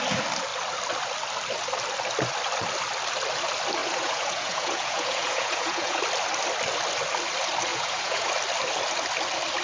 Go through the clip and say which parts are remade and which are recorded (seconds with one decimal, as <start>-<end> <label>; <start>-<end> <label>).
0.0-3.8 recorded; 3.8-6.0 remade; 6.0-7.7 recorded; 7.7-8.3 remade; 8.3-9.6 recorded